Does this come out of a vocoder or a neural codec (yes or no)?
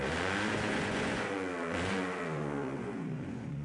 yes